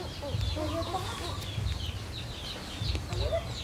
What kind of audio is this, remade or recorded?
recorded